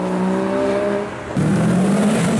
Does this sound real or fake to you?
real